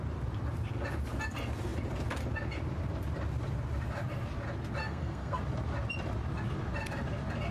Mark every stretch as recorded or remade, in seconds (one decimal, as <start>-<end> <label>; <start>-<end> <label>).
0.0-4.8 recorded; 4.8-5.4 remade; 5.4-7.5 recorded